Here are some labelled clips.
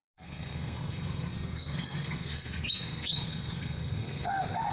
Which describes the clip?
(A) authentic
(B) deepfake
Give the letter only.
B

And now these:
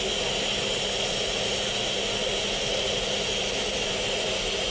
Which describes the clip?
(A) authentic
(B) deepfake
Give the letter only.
A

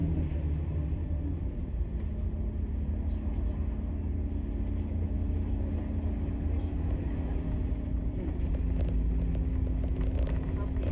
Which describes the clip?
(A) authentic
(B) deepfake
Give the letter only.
A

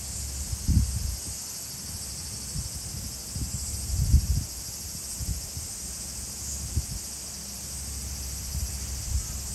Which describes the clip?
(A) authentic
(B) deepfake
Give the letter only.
A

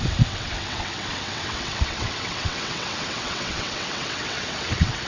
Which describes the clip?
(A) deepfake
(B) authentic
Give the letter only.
A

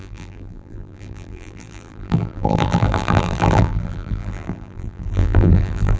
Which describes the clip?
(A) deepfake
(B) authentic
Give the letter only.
A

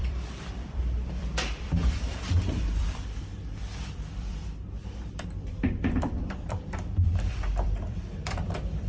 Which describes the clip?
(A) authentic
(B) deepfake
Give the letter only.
B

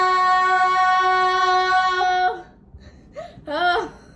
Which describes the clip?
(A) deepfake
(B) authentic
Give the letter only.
B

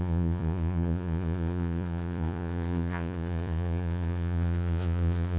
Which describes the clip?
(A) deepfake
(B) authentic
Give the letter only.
A